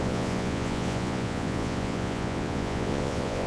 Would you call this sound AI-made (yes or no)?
yes